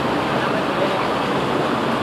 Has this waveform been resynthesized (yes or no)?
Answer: no